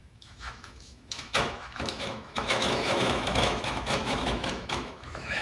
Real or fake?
fake